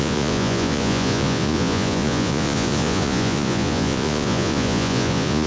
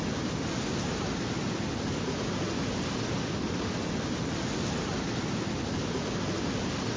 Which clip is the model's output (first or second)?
first